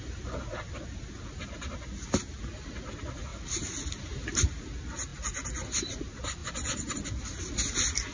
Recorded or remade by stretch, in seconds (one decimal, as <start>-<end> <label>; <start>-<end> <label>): 0.0-6.4 recorded; 6.4-6.9 remade; 6.9-8.1 recorded